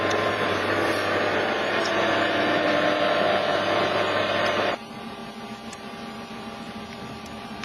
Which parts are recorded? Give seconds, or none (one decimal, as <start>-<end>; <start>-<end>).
1.3-2.1; 5.2-5.7